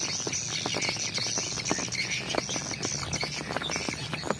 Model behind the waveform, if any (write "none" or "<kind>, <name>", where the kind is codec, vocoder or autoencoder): none